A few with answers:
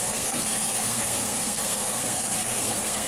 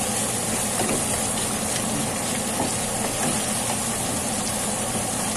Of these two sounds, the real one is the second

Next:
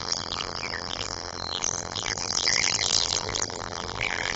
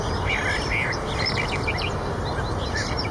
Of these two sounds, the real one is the second